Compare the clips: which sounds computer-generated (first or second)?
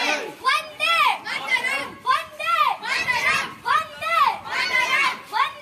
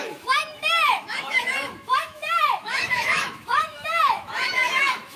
second